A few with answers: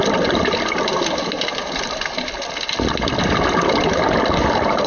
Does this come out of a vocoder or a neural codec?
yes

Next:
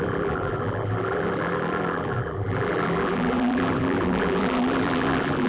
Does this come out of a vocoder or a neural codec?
yes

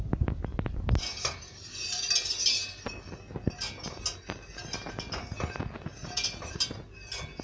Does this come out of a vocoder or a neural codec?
no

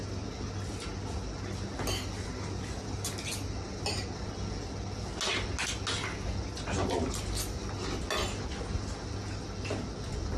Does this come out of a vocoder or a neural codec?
no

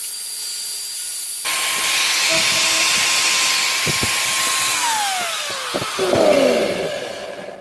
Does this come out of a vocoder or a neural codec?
no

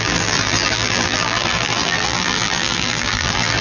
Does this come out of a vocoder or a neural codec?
yes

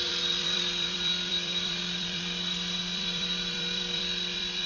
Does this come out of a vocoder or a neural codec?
yes